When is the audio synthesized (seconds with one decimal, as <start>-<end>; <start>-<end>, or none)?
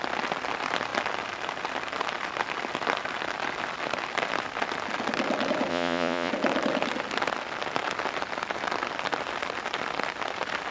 5.7-6.3